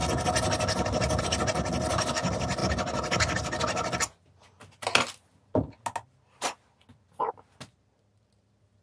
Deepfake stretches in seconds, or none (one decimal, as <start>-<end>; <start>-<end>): none